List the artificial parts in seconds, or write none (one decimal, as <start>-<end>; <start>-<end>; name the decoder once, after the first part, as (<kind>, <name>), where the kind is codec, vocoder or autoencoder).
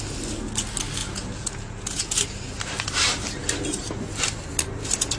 1.0-2.2 (vocoder, Vocos)